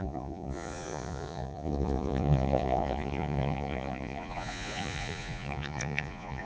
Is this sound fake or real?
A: fake